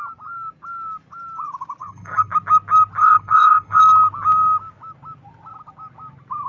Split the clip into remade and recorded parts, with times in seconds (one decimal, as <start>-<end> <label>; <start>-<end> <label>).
0.0-1.8 recorded; 1.8-2.3 remade; 2.3-3.0 recorded; 3.0-3.8 remade; 3.8-6.5 recorded